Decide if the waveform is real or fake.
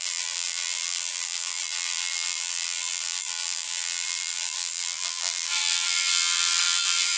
fake